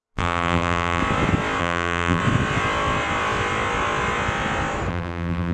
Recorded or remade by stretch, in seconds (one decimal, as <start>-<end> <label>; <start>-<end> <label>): 0.0-1.0 remade; 1.0-1.6 recorded; 1.6-2.2 remade; 2.2-4.9 recorded; 4.9-5.5 remade